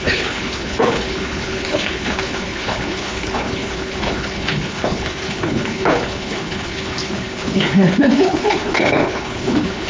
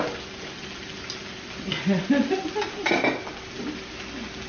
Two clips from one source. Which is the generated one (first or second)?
first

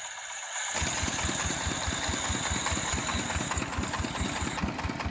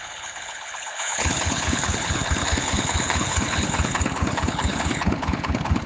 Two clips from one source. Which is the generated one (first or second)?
second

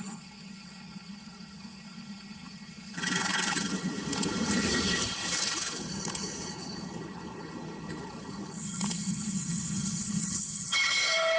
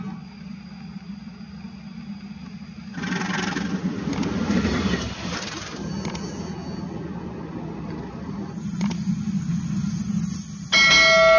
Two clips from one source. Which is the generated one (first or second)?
first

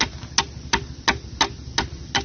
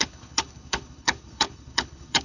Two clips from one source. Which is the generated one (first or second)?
second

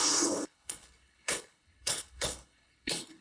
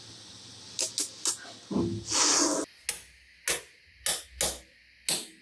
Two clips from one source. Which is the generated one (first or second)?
first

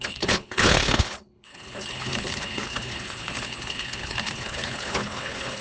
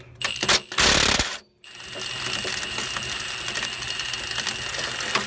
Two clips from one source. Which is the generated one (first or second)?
first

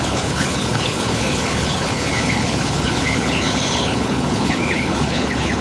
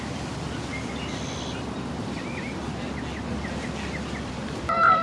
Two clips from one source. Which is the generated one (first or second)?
first